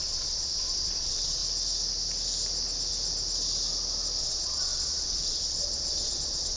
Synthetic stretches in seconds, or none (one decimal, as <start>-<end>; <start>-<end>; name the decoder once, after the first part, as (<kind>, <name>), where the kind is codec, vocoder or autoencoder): 0.0-1.4 (vocoder, Vocos); 4.2-6.6